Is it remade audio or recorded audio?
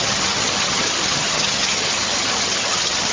remade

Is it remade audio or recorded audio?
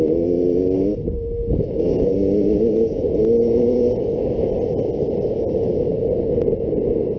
recorded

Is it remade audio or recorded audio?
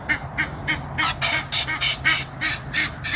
recorded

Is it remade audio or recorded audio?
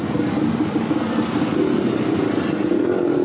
recorded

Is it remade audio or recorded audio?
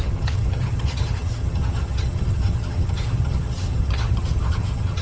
remade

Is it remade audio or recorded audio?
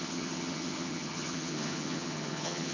remade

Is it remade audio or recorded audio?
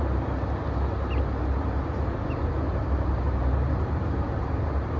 recorded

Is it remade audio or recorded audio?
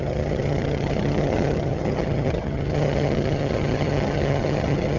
remade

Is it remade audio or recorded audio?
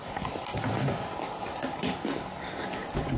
recorded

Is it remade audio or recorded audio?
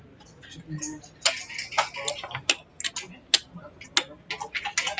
recorded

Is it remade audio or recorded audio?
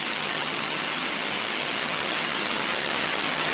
remade